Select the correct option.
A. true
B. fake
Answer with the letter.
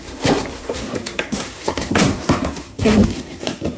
B